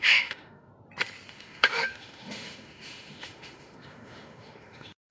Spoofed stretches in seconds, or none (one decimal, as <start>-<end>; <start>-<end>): 0.0-0.7; 1.3-5.1